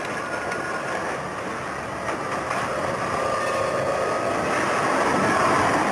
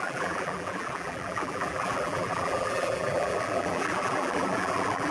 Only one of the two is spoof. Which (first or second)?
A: second